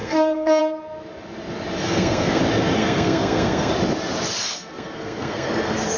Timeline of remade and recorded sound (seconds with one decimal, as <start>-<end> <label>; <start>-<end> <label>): 0.0-0.6 remade; 0.6-1.8 recorded; 1.8-2.4 remade; 2.4-2.8 recorded; 2.8-3.7 remade; 3.7-4.4 recorded; 4.4-5.5 remade; 5.5-6.0 recorded